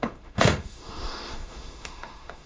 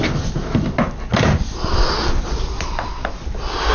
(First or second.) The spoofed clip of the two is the first